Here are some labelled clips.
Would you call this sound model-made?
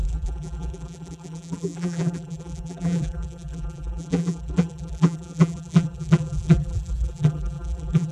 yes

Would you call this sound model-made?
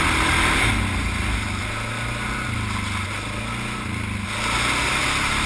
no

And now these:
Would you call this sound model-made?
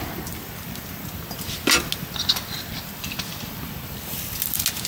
no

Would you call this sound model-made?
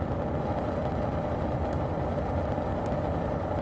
no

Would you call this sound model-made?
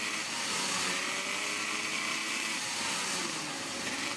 yes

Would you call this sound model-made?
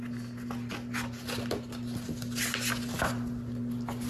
no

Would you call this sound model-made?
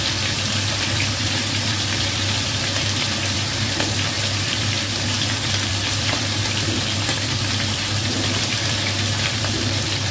yes